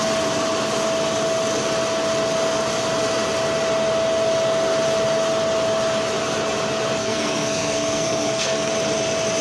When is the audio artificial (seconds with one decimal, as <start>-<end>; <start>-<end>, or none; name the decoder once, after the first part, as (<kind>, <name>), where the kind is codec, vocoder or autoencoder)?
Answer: 7.0-8.7 (codec, SNAC)